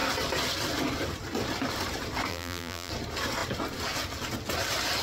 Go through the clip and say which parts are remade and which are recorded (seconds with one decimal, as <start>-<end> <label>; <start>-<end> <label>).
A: 0.0-2.3 recorded; 2.3-2.9 remade; 2.9-5.0 recorded